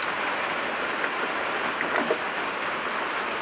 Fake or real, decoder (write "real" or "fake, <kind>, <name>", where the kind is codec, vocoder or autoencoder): real